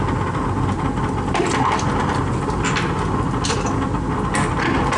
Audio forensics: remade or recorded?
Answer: recorded